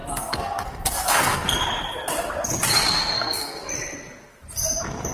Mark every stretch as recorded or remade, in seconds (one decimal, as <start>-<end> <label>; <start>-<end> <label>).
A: 0.0-1.6 remade; 1.6-3.0 recorded; 3.0-3.6 remade; 3.6-5.1 recorded